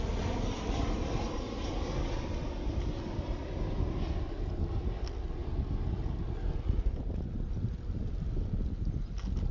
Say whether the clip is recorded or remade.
recorded